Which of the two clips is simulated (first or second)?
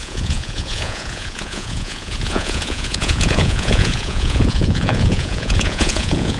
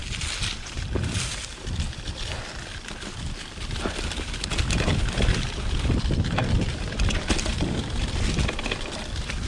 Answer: first